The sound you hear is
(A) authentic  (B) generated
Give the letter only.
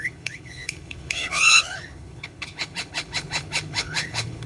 B